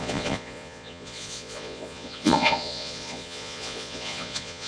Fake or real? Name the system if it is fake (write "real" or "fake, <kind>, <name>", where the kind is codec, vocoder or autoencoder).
fake, vocoder, Vocos